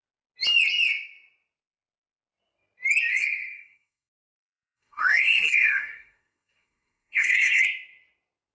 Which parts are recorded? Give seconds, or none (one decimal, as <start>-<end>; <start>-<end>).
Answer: 0.0-3.1; 7.6-8.5